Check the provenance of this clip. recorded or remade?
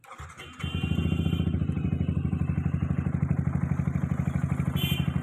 recorded